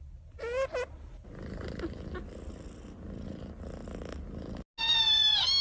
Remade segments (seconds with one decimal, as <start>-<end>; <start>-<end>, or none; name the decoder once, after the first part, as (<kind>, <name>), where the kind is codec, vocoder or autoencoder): none